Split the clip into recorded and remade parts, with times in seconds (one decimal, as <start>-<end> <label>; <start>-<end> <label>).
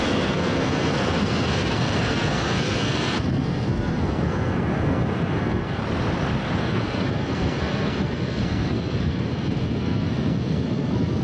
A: 0.0-5.8 remade; 5.8-6.6 recorded; 6.6-11.2 remade